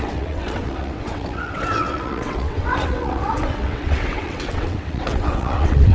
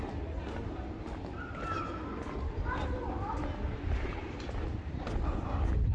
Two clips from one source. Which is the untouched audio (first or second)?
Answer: second